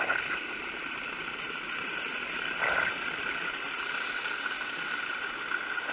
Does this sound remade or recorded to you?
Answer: recorded